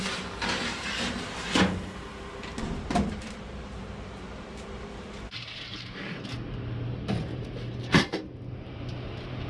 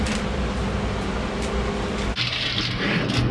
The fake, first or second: first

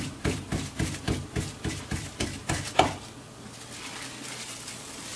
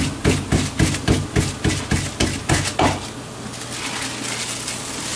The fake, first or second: first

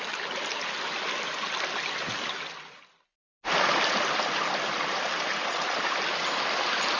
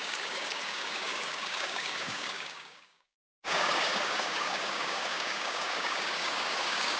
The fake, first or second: second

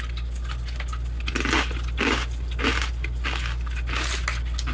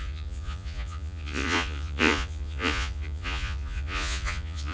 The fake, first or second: second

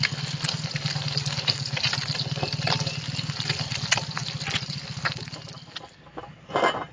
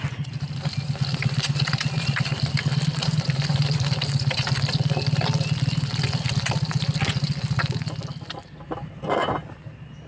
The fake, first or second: second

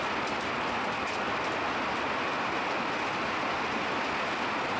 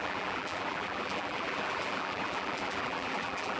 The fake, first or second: second